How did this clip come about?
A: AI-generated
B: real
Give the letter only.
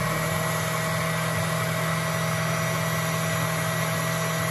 B